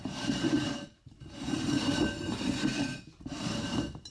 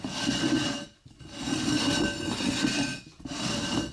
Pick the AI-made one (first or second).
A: first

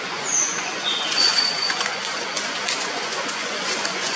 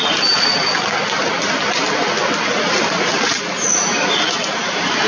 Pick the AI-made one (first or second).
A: first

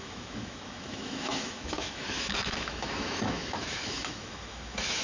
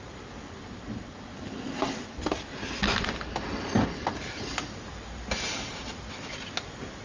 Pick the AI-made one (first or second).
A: first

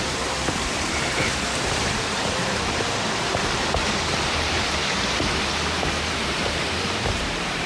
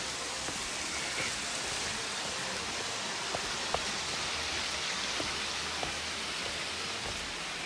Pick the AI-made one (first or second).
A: first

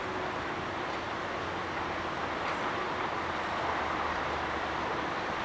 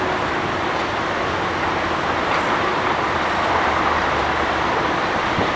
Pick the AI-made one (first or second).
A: second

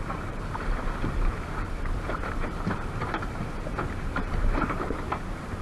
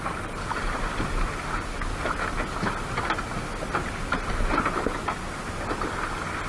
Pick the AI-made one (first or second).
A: first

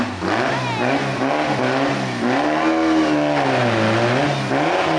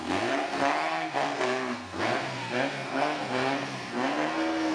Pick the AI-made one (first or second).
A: second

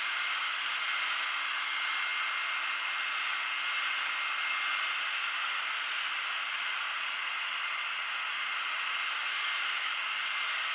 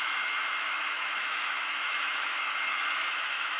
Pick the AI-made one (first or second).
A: second